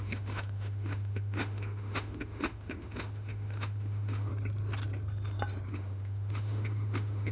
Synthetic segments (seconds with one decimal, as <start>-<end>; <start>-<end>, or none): 0.0-4.3; 5.7-7.3